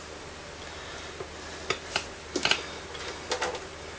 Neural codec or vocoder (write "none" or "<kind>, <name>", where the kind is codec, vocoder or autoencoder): none